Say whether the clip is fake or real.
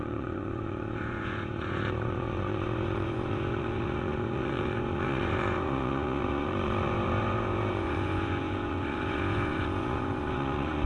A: fake